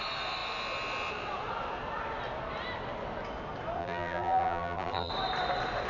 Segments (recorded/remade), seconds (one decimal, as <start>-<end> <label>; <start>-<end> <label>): 0.0-3.8 recorded; 3.8-5.1 remade; 5.1-5.9 recorded